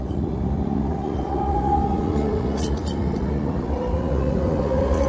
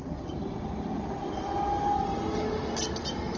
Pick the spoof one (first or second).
first